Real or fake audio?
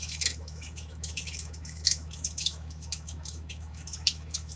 fake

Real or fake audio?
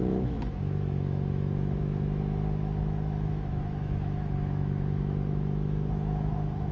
fake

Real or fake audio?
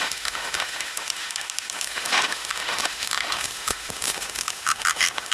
fake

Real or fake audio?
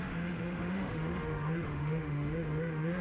fake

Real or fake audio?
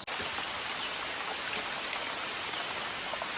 real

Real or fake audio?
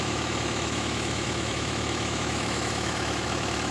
fake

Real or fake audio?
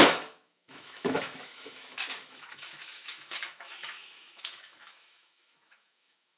fake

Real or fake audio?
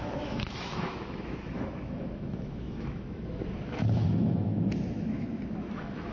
fake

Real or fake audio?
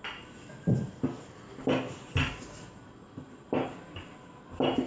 real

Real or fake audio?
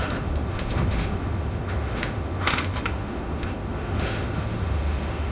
fake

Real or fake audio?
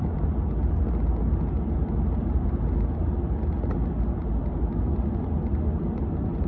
real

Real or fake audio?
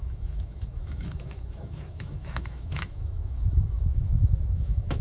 fake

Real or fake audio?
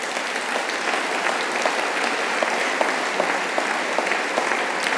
real